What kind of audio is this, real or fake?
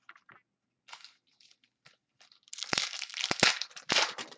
real